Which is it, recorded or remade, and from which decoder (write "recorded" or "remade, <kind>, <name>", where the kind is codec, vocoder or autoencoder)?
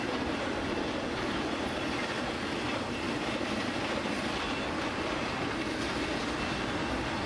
recorded